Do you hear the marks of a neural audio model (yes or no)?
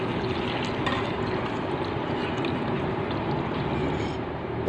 no